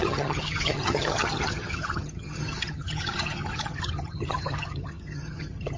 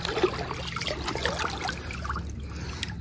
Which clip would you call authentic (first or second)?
second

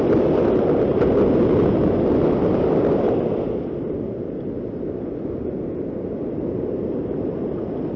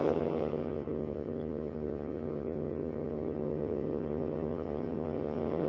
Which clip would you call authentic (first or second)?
first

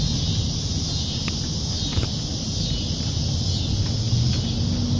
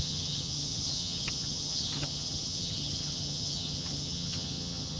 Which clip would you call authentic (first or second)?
first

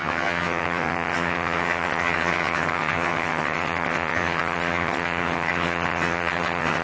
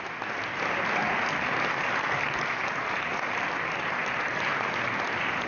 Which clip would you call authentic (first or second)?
second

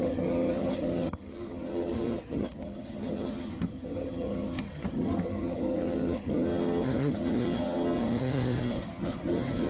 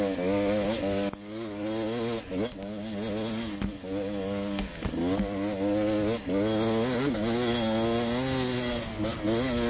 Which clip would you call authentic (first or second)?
second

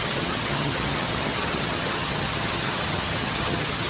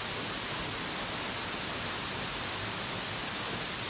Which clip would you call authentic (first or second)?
second